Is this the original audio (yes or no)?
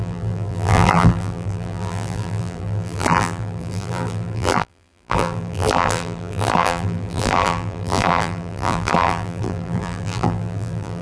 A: no